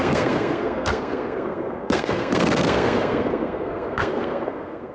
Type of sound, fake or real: fake